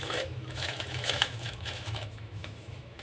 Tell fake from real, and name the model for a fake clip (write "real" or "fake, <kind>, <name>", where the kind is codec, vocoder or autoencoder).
fake, autoencoder, DAC-VAE